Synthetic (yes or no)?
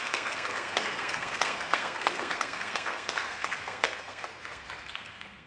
yes